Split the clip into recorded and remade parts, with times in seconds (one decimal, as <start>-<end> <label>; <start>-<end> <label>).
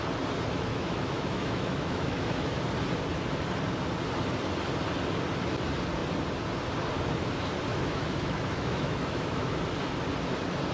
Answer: 0.0-0.7 recorded; 0.7-2.6 remade; 2.6-7.7 recorded; 7.7-9.6 remade; 9.6-10.7 recorded